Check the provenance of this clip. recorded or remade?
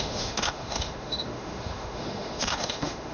remade